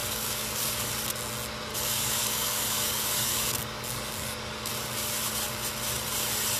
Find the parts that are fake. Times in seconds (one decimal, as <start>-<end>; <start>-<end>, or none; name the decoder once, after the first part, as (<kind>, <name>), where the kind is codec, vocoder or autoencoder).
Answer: 0.0-0.9 (codec, DAC); 1.7-4.7